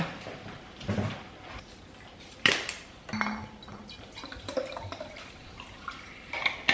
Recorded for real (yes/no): yes